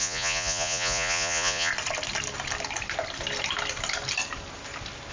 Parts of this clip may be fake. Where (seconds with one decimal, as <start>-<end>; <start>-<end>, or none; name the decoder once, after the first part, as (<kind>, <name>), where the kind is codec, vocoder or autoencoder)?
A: 0.0-1.7 (vocoder, Vocos)